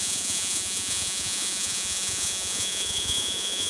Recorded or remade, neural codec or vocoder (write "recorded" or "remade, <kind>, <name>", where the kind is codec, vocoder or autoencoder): remade, vocoder, Vocos